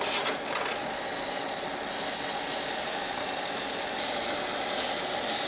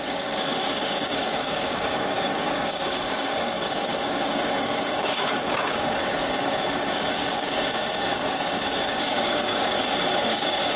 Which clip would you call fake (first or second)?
second